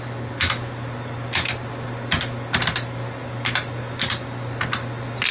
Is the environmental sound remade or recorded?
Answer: recorded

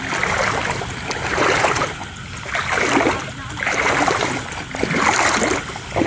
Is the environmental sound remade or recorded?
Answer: recorded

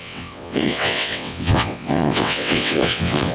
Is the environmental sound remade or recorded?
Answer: remade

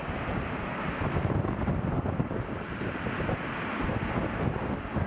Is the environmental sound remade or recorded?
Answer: recorded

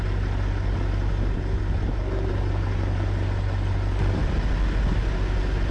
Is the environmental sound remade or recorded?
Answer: recorded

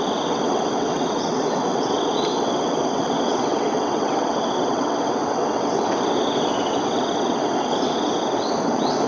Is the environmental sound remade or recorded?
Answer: remade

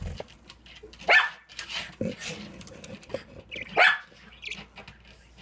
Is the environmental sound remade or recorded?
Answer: recorded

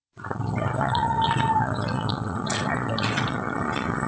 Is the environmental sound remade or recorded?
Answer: remade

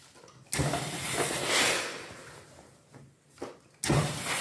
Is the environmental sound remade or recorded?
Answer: recorded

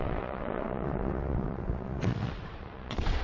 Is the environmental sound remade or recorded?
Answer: remade